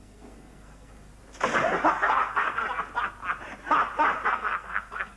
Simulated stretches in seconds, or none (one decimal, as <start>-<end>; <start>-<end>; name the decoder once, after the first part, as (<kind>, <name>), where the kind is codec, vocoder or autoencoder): 0.0-1.1 (codec, SNAC); 1.9-2.6; 4.3-5.2